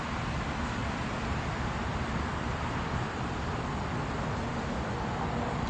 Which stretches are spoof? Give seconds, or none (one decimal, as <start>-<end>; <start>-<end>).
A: 0.8-2.3